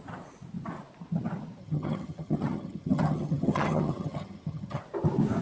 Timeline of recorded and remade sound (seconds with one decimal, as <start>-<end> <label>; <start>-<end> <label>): 0.0-1.6 recorded; 1.6-4.8 remade; 4.8-5.4 recorded